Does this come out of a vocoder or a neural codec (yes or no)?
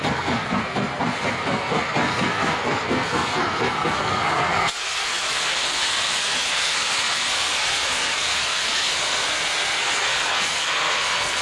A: yes